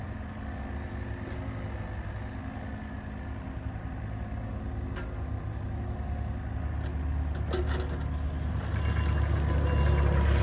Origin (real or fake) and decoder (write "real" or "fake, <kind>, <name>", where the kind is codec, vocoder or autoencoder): real